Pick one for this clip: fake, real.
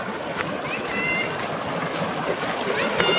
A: real